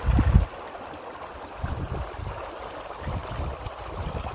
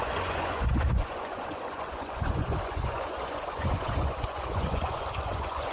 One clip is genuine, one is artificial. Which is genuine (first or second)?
first